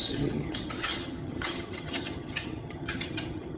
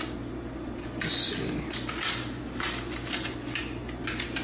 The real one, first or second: second